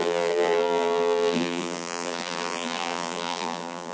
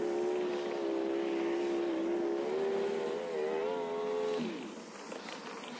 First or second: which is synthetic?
first